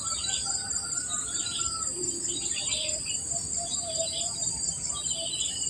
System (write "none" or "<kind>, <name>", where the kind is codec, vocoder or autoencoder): vocoder, BigVGAN v2